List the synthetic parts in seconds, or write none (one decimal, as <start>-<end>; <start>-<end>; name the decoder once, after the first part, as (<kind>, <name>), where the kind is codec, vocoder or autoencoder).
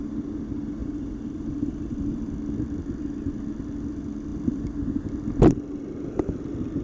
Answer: 0.8-3.4 (vocoder, BigVGAN v2); 4.3-5.8